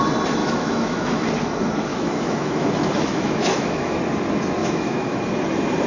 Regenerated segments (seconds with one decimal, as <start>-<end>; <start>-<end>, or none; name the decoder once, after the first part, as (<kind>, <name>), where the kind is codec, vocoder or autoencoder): 0.4-1.3 (autoencoder, DAC-VAE); 1.9-4.0; 4.6-5.2